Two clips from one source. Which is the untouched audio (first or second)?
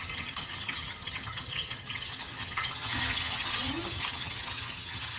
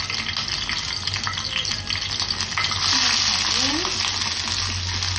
second